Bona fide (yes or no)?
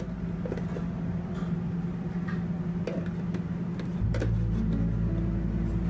yes